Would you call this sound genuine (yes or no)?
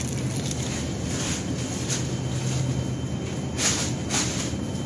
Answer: yes